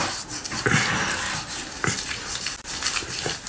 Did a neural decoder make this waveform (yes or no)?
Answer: no